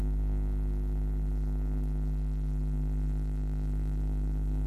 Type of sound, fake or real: fake